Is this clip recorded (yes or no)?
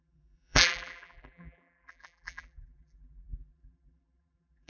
no